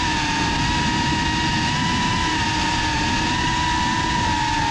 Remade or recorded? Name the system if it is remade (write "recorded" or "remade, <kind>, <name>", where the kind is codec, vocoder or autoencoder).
recorded